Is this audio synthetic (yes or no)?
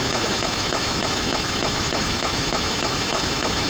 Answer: yes